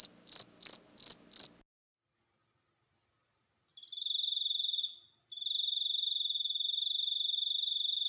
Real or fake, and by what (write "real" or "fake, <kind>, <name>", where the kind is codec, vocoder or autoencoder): real